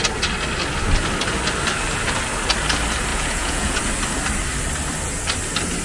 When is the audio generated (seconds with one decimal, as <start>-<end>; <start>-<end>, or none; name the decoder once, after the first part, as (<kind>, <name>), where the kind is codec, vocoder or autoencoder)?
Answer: 3.1-3.8 (vocoder, Vocos)